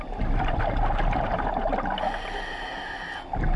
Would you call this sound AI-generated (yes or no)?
no